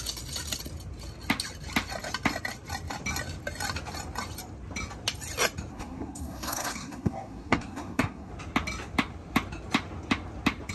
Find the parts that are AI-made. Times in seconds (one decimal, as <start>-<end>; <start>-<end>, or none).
5.7-8.3